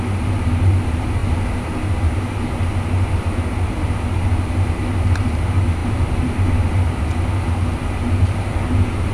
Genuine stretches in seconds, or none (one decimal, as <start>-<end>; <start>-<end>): 0.0-9.1